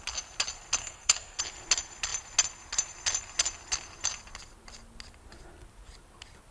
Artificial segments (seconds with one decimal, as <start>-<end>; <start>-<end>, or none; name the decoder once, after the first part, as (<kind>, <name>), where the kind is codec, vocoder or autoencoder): 0.8-1.4 (codec, SNAC)